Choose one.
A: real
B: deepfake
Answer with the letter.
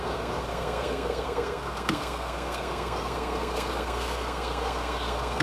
B